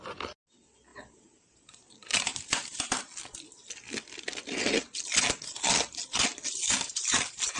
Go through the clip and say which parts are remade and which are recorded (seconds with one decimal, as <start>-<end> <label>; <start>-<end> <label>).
0.0-0.9 recorded; 0.9-2.8 remade; 2.8-7.6 recorded